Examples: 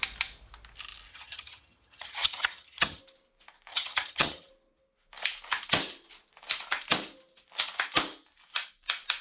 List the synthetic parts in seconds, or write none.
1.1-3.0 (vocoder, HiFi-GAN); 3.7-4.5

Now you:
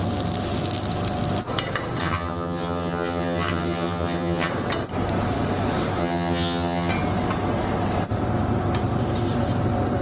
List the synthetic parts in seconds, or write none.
2.0-4.5 (vocoder, HiFi-GAN); 6.0-6.9

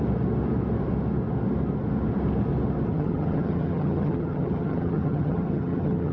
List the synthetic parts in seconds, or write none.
2.9-6.1 (vocoder, HiFi-GAN)

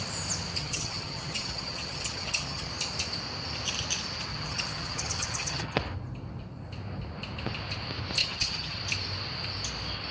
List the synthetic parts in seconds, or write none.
0.6-2.7 (vocoder, HiFi-GAN); 4.3-5.8; 8.2-8.8

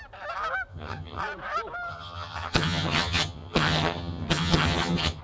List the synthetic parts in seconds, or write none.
0.7-1.2 (vocoder, HiFi-GAN); 1.9-5.2

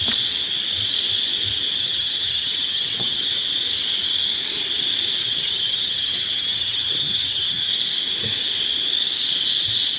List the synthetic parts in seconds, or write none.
1.8-3.3 (vocoder, HiFi-GAN); 5.2-7.7